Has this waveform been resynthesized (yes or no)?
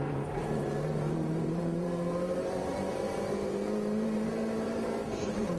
yes